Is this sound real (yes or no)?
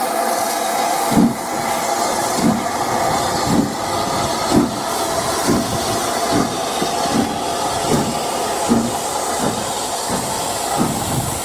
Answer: yes